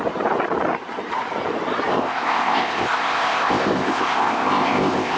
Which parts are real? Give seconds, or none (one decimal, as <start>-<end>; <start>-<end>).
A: 0.0-1.9